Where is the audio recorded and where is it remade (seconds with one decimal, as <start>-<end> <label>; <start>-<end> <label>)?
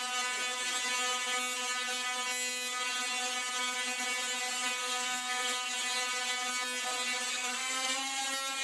0.0-4.8 recorded; 4.8-5.7 remade; 5.7-7.3 recorded; 7.3-8.2 remade; 8.2-8.6 recorded